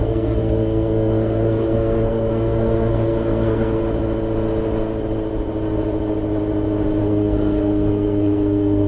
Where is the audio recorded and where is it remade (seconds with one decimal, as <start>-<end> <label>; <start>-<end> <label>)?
0.0-3.8 remade; 3.8-7.0 recorded; 7.0-8.9 remade